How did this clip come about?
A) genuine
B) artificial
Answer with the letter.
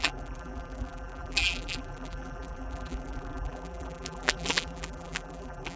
B